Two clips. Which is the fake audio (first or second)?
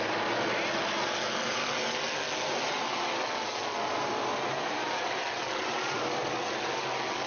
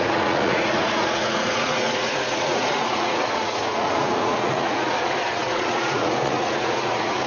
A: second